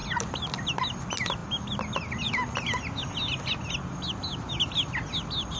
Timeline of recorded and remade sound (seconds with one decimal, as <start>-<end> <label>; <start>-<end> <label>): 0.0-5.6 recorded